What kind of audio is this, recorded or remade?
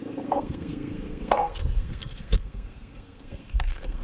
remade